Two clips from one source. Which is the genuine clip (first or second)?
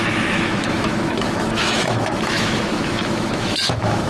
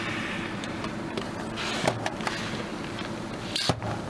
second